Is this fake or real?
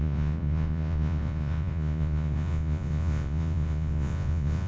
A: fake